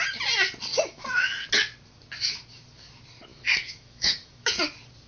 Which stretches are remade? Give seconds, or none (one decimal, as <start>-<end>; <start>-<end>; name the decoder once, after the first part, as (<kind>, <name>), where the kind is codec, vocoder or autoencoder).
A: 0.7-1.4 (autoencoder, DAC-VAE); 3.3-4.6